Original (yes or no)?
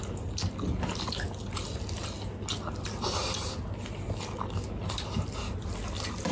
yes